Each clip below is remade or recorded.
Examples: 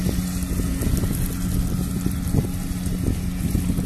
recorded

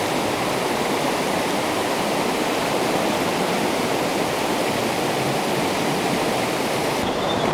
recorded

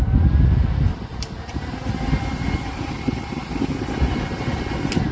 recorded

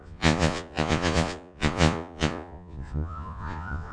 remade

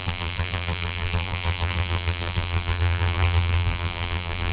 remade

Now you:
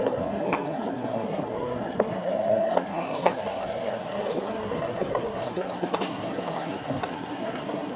remade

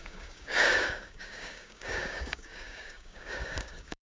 remade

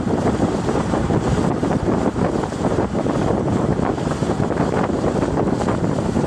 remade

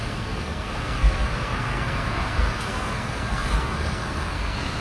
remade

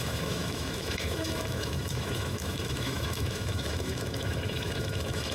remade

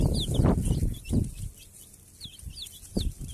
recorded